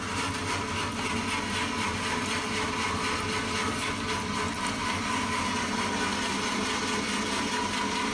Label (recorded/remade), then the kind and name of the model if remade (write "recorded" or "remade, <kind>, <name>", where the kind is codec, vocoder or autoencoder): recorded